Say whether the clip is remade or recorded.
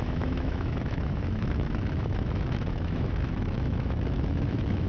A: remade